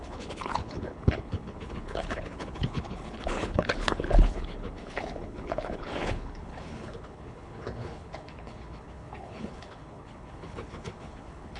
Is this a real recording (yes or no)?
no